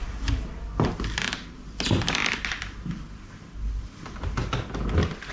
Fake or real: real